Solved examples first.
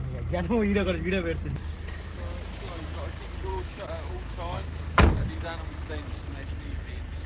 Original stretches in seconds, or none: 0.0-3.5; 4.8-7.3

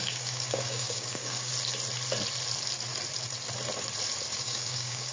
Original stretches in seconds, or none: 1.5-4.4